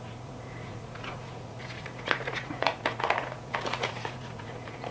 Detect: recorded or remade remade